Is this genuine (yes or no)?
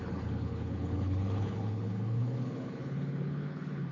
no